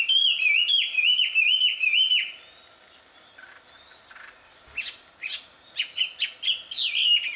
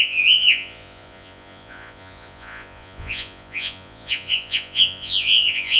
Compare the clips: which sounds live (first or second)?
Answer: first